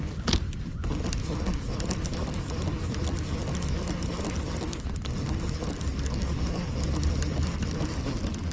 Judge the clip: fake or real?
real